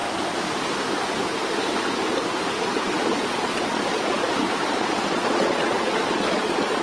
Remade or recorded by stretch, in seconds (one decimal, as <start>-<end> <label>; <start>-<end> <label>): 0.0-3.0 recorded; 3.0-4.2 remade; 4.2-4.7 recorded; 4.7-6.8 remade